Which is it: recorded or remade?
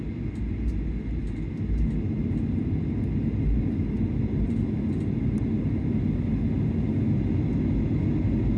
recorded